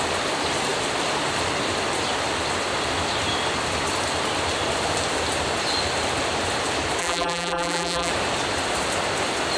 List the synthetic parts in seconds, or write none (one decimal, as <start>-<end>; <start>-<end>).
7.0-8.1